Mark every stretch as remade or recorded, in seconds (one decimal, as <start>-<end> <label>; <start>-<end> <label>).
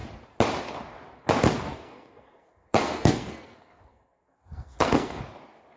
0.0-1.7 recorded; 1.7-5.2 remade; 5.2-5.8 recorded